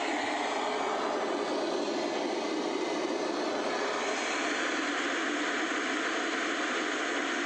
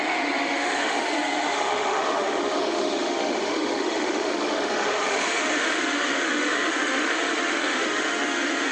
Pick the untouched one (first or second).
first